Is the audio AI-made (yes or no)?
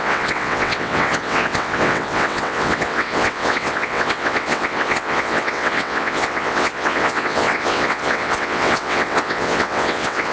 yes